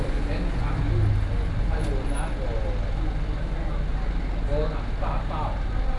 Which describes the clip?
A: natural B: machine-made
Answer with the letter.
A